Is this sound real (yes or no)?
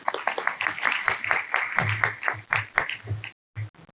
yes